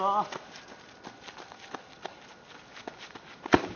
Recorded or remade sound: recorded